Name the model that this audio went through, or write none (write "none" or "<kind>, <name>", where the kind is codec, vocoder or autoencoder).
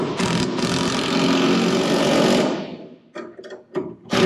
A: none